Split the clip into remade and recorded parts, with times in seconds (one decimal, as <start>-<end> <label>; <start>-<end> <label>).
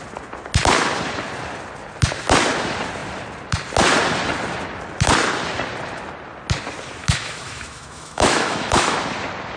0.0-7.0 recorded; 7.0-9.0 remade; 9.0-9.6 recorded